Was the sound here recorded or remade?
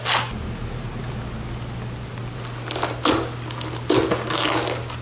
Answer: recorded